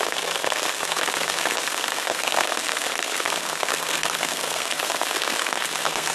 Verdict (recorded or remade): remade